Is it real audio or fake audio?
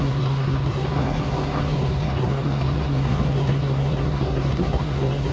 fake